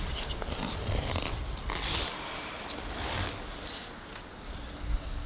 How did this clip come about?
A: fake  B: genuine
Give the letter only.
B